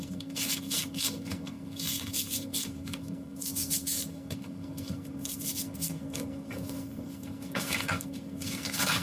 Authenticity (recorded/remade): remade